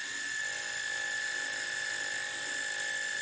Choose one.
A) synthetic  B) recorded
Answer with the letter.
A